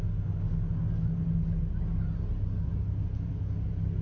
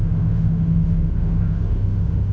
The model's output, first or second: second